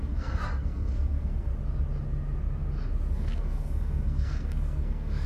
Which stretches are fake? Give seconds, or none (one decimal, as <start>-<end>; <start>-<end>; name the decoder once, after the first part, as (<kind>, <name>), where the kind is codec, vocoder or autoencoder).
0.0-1.5 (codec, SNAC); 3.1-5.3